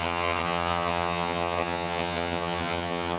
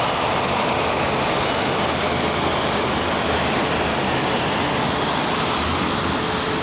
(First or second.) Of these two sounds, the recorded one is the second